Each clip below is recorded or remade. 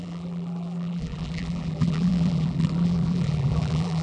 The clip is remade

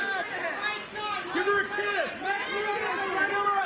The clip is recorded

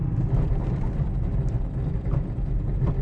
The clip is recorded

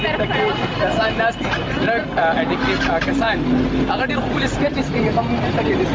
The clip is recorded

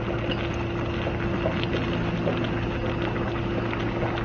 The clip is recorded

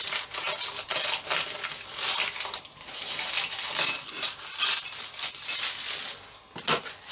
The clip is recorded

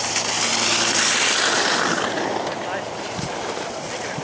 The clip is recorded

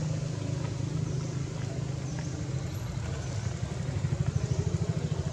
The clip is recorded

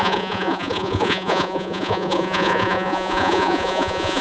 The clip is remade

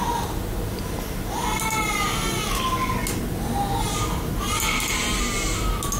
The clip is recorded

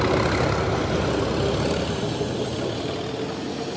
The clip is recorded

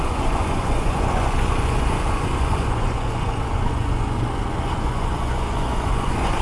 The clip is remade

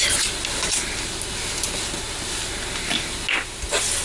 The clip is recorded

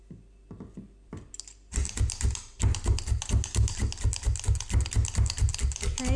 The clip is recorded